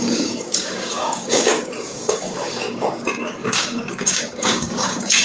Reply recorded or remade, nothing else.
remade